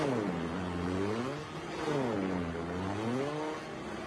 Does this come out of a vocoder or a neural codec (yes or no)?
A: no